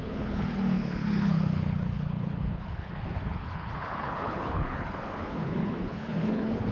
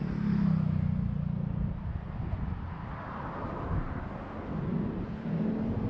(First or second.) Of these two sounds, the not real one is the first